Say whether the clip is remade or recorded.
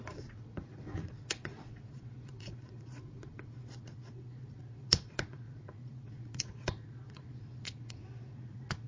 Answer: remade